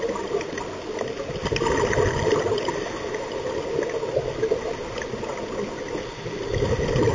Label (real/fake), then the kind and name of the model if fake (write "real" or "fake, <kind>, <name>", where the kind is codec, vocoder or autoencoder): real